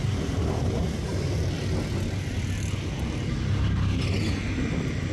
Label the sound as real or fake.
real